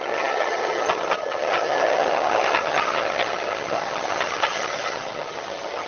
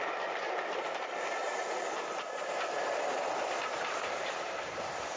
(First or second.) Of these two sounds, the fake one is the first